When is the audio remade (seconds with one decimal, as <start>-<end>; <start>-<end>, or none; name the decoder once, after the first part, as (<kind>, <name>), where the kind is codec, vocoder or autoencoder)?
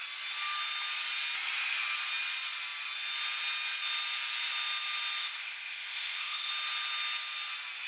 5.2-6.5 (codec, ZipCodec)